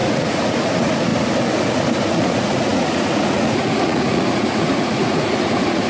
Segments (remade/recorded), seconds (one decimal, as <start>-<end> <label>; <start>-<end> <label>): 0.0-1.1 remade; 1.1-2.0 recorded; 2.0-5.9 remade